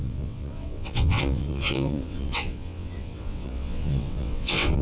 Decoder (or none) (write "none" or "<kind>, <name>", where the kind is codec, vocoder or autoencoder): vocoder, WaveNeXt